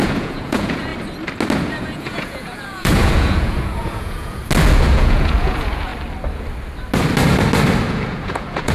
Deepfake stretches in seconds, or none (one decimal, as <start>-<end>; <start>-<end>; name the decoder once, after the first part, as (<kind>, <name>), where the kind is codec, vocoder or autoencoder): 0.0-0.9 (vocoder, Vocos); 1.8-4.4; 4.9-5.9; 7.9-8.7